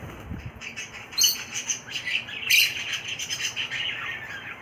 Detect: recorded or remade recorded